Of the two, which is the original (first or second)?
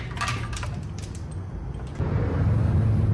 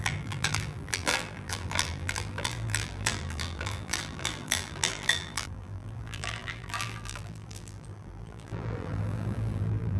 first